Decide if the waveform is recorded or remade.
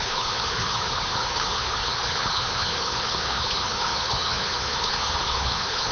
remade